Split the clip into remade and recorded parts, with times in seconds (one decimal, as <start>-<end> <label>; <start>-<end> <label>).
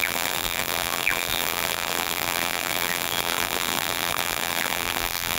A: 0.0-5.4 remade